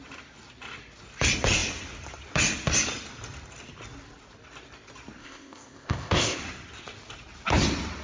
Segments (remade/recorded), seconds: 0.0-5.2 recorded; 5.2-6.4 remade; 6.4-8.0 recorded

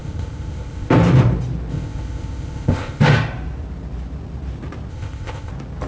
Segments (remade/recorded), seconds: 0.0-0.9 remade; 0.9-1.7 recorded; 1.7-3.0 remade; 3.0-4.9 recorded; 4.9-5.5 remade; 5.5-5.9 recorded

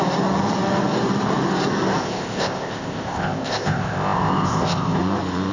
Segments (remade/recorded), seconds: 0.0-2.0 recorded; 2.0-5.0 remade; 5.0-5.5 recorded

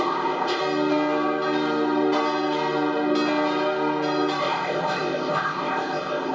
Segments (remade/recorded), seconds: 0.0-0.6 remade; 0.6-4.4 recorded; 4.4-6.3 remade

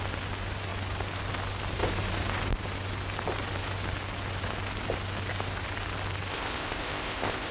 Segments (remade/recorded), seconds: 0.0-6.3 recorded; 6.3-7.5 remade

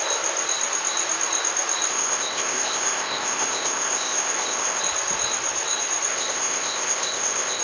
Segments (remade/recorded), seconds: 0.0-1.9 recorded; 1.9-4.8 remade; 4.8-6.1 recorded; 6.1-7.6 remade